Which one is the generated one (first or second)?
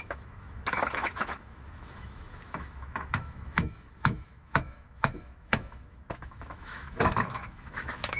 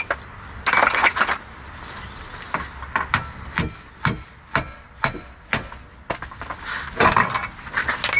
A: first